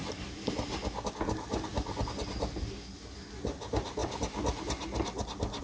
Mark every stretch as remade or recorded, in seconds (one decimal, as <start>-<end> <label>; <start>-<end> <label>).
0.0-5.6 recorded